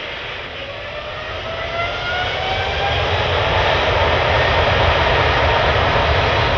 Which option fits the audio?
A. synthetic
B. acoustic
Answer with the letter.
B